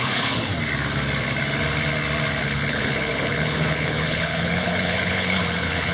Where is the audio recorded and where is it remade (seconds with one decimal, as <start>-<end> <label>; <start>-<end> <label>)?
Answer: 0.0-0.5 remade; 0.5-2.4 recorded; 2.4-5.9 remade